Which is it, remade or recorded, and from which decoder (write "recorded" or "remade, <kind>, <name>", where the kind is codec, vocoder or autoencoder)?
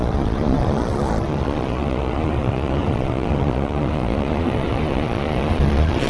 remade, vocoder, Vocos